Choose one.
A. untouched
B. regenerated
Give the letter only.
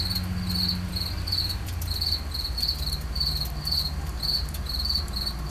A